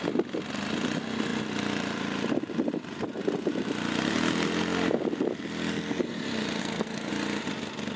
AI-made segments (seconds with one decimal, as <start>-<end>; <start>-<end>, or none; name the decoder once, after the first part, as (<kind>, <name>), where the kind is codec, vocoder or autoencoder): 6.6-7.1 (codec, SNAC)